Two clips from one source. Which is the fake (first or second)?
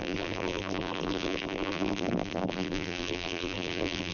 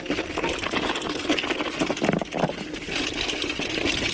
first